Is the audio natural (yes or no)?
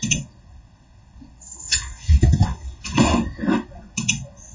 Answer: no